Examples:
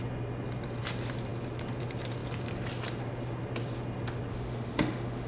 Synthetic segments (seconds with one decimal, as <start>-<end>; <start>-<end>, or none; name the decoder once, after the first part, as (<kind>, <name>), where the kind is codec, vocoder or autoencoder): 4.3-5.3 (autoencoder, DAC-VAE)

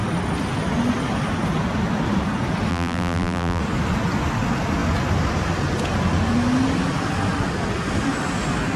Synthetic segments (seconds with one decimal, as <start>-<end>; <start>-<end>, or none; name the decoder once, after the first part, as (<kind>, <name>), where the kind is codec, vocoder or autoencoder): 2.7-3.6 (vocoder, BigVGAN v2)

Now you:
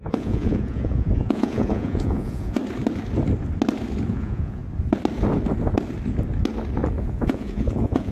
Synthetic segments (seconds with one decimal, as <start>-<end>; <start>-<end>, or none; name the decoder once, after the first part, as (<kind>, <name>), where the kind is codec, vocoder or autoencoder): 0.0-2.6 (vocoder, Vocos); 4.1-4.6; 7.0-8.1